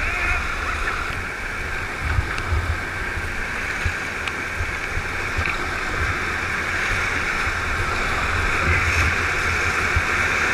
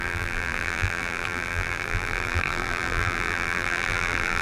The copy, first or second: second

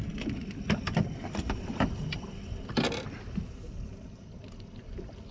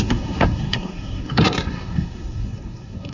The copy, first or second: second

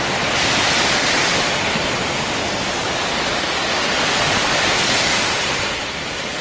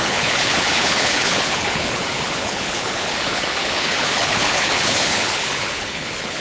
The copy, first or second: second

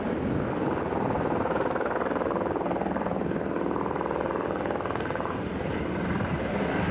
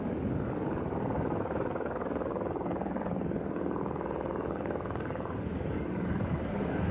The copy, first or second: second